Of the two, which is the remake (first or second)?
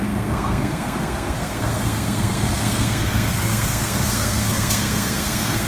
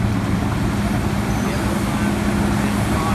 first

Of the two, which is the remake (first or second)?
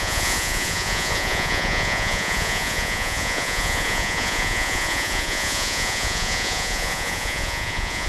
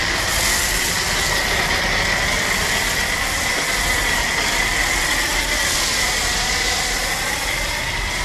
first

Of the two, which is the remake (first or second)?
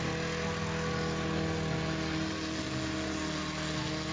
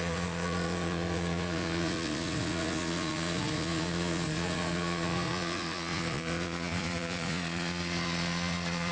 second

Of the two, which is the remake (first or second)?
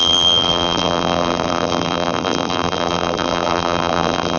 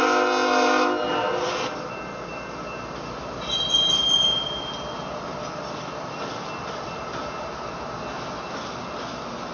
first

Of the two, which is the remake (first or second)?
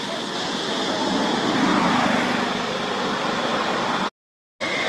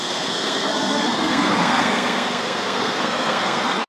second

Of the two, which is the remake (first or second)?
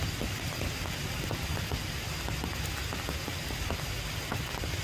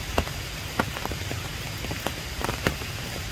second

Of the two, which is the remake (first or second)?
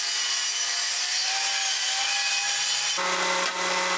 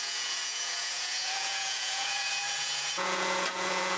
second